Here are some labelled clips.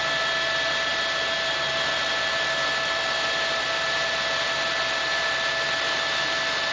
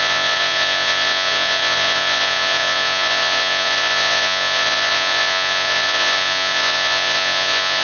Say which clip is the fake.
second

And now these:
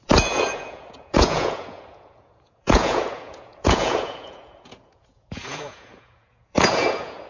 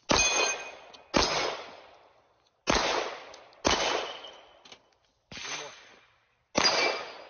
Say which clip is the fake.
first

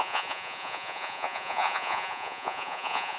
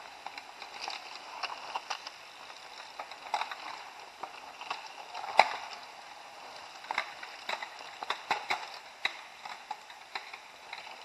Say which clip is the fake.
first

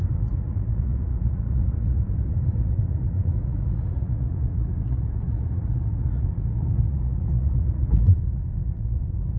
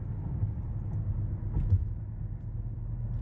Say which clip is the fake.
first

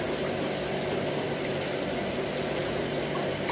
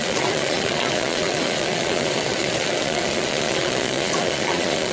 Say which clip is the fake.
second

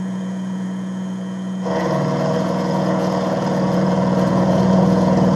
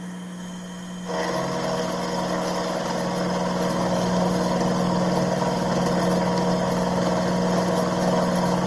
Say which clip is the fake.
first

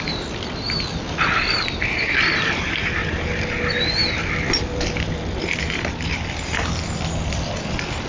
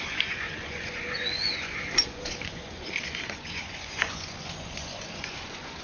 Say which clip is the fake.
second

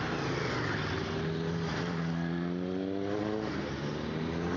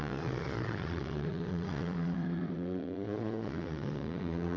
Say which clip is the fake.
second